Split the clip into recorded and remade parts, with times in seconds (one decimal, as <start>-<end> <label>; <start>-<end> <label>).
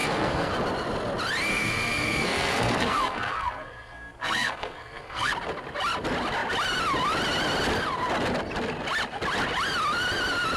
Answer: 0.0-0.5 remade; 0.5-1.5 recorded; 1.5-5.3 remade; 5.3-10.6 recorded